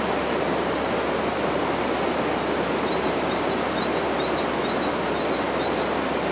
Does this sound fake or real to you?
real